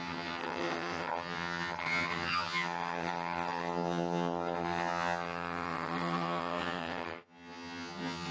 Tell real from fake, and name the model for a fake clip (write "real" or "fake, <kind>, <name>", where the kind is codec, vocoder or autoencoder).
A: fake, vocoder, HiFi-GAN